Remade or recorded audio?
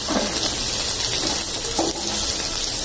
recorded